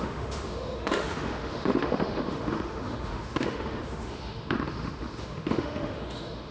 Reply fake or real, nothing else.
fake